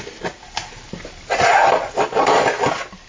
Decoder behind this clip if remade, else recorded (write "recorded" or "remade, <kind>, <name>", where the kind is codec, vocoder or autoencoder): recorded